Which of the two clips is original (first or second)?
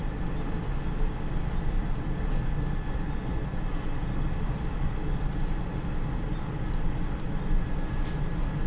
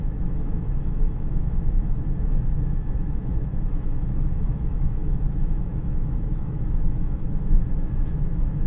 first